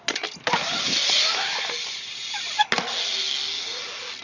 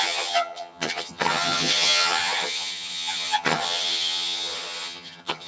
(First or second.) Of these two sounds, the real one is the first